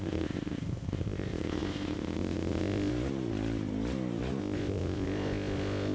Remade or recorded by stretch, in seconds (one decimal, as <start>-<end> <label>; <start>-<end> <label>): 0.0-2.9 remade; 2.9-4.4 recorded; 4.4-5.9 remade